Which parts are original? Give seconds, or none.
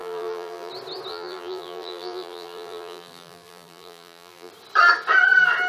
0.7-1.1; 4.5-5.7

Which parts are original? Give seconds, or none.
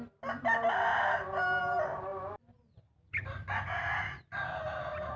0.0-5.2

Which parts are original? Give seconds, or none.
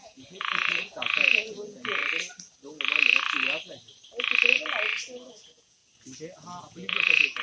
2.0-5.3; 5.8-6.6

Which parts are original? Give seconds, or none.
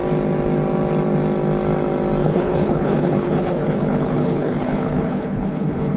0.0-2.2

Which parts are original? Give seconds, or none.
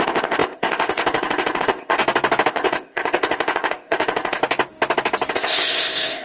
2.0-2.5; 4.4-5.3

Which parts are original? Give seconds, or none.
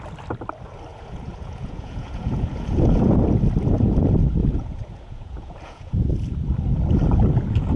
0.0-0.9; 3.1-4.4; 6.1-7.8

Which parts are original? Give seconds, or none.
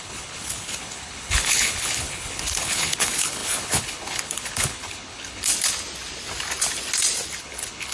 5.5-7.4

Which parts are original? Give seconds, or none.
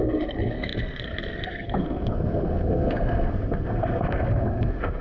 none